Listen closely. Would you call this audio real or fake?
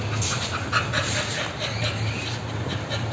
real